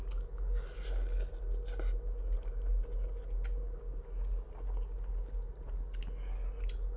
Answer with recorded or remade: recorded